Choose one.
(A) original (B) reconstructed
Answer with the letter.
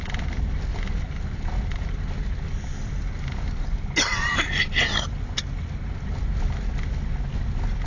A